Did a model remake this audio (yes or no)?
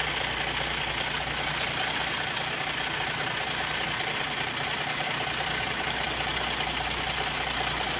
no